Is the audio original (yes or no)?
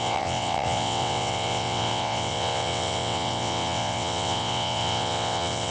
no